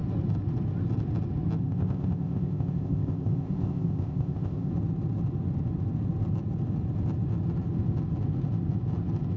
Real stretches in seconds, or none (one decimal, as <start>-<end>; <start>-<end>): 0.0-1.6; 4.7-9.4